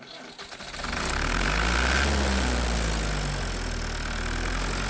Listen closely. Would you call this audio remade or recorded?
recorded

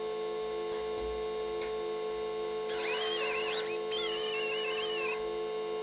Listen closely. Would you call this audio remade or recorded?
recorded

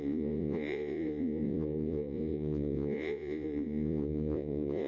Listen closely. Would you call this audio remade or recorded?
remade